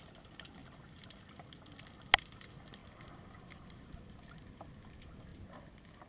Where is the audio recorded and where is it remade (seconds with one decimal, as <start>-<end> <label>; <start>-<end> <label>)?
0.0-6.1 recorded